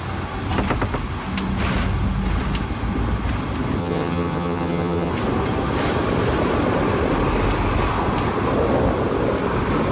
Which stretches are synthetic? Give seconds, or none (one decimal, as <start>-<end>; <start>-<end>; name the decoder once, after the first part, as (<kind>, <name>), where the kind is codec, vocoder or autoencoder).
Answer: 3.8-5.1 (vocoder, HiFi-GAN)